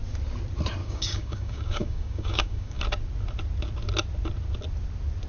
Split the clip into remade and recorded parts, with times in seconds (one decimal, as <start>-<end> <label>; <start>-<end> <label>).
0.0-0.8 recorded; 0.8-2.8 remade; 2.8-5.3 recorded